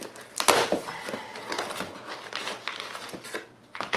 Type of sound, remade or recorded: recorded